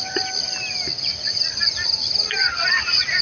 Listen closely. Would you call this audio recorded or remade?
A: recorded